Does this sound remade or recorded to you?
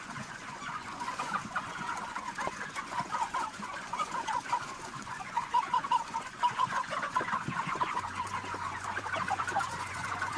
remade